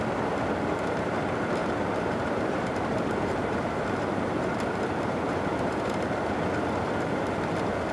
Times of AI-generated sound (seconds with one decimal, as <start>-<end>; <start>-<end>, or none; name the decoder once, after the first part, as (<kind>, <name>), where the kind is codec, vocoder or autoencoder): 1.6-6.3 (vocoder, BigVGAN v2)